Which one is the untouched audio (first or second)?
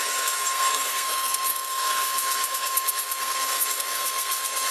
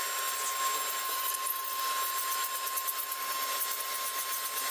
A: second